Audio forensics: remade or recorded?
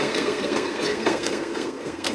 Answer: remade